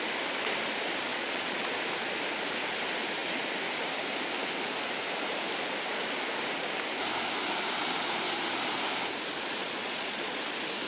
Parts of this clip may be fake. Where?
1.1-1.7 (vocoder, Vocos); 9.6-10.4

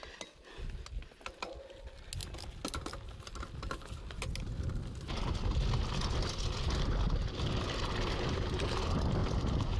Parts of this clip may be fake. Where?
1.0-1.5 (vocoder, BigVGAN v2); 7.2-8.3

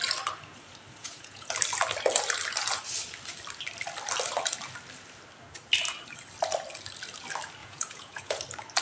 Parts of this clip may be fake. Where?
1.0-1.5 (vocoder, Vocos); 7.6-8.4

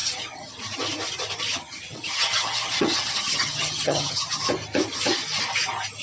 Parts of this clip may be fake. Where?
0.0-0.6 (vocoder, HiFi-GAN); 1.5-4.4

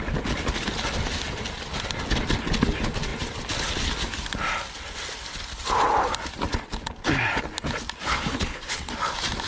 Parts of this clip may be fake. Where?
8.1-8.9 (codec, HILCodec)

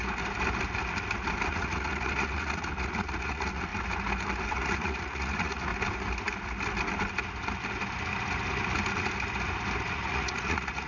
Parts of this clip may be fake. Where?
1.5-3.7 (vocoder, Vocos); 4.5-5.7; 9.9-10.9

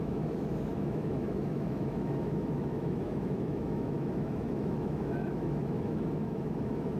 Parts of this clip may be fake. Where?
0.0-7.0 (autoencoder, DAC-VAE)

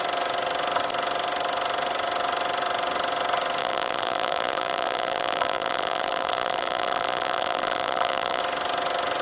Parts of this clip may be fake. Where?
3.6-8.4 (vocoder, BigVGAN v2)